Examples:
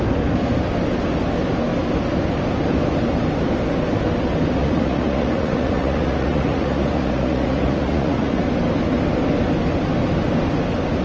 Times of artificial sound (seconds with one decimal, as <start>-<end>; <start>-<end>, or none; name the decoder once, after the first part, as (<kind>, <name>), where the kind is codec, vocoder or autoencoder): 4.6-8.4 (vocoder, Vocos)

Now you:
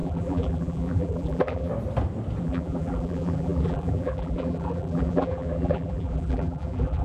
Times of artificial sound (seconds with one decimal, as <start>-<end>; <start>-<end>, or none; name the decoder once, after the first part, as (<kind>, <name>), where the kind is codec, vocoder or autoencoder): 0.0-1.7 (vocoder, BigVGAN v2); 2.4-7.0

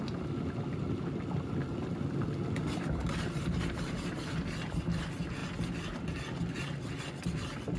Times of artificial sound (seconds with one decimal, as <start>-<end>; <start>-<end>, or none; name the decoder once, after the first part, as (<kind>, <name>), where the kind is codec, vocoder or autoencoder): none

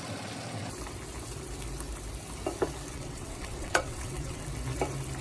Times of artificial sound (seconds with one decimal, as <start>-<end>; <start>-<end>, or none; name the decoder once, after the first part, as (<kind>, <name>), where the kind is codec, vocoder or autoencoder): 2.9-4.4 (vocoder, WaveNeXt)

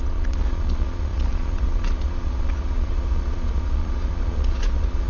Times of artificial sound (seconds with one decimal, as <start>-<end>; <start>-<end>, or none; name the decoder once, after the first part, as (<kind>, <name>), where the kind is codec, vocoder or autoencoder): 0.0-5.1 (vocoder, Vocos)

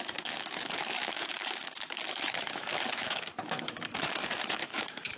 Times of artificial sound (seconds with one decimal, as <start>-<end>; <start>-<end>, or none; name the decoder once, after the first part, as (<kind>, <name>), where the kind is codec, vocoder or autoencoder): 0.0-5.2 (autoencoder, DAC-VAE)

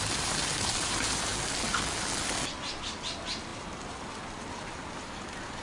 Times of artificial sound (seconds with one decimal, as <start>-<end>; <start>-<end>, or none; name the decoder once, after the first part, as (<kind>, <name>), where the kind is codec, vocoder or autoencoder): 0.0-1.3 (vocoder, BigVGAN v2); 2.9-5.6